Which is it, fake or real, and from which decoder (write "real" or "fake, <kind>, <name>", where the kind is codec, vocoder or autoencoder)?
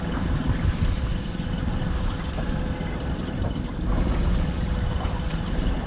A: fake, vocoder, BigVGAN v2